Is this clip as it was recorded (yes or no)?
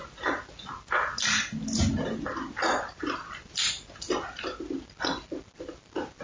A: yes